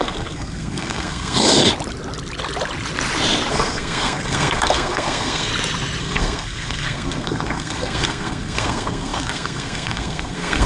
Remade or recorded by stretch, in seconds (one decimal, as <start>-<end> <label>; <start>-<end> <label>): 0.0-1.6 remade; 1.6-3.5 recorded; 3.5-5.5 remade; 5.5-6.0 recorded; 6.0-10.7 remade